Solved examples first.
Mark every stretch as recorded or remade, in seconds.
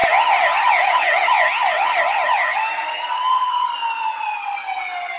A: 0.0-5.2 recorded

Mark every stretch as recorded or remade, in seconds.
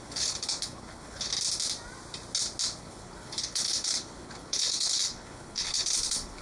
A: 0.0-1.3 remade; 1.3-2.8 recorded; 2.8-6.4 remade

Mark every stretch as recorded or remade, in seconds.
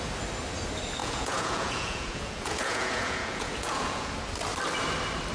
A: 0.0-1.0 recorded; 1.0-4.1 remade; 4.1-5.3 recorded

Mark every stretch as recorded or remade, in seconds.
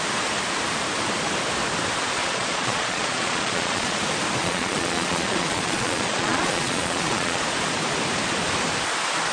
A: 0.0-2.2 recorded; 2.2-4.0 remade; 4.0-4.4 recorded; 4.4-7.4 remade; 7.4-9.3 recorded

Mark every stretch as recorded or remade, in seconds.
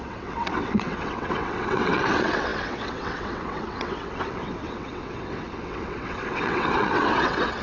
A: 0.0-7.6 remade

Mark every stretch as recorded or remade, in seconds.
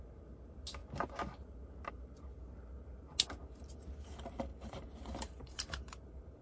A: 0.0-4.5 recorded; 4.5-6.4 remade